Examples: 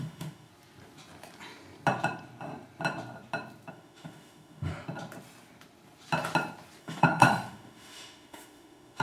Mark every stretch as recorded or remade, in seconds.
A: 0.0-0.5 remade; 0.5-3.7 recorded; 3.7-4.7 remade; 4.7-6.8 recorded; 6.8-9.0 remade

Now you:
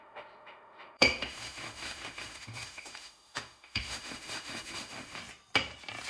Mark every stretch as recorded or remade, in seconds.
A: 0.0-5.2 remade; 5.2-6.1 recorded

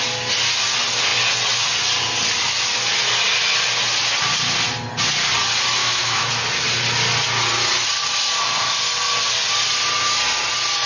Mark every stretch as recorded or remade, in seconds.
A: 0.0-5.8 recorded; 5.8-6.3 remade; 6.3-10.9 recorded

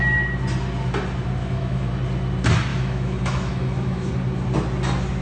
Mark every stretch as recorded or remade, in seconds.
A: 0.0-1.4 recorded; 1.4-1.9 remade; 1.9-2.7 recorded; 2.7-4.1 remade; 4.1-5.2 recorded

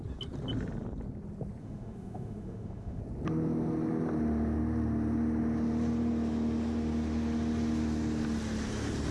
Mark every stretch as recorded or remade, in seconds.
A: 0.0-1.6 recorded; 1.6-3.0 remade; 3.0-9.1 recorded

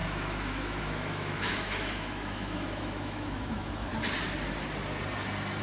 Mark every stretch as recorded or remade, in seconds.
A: 0.0-3.9 remade; 3.9-5.6 recorded

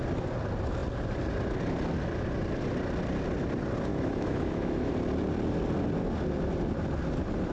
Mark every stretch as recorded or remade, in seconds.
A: 0.0-3.9 recorded; 3.9-4.9 remade; 4.9-7.5 recorded

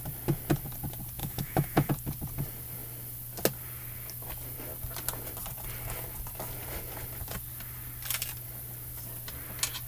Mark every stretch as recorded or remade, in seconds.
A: 0.0-1.2 recorded; 1.2-1.9 remade; 1.9-9.9 recorded